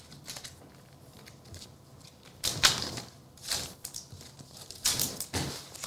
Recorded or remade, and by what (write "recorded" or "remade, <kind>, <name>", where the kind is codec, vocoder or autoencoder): remade, vocoder, BigVGAN v2